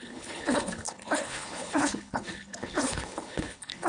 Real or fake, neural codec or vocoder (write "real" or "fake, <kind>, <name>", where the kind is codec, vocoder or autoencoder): fake, codec, HILCodec